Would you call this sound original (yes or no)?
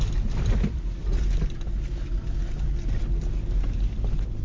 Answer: yes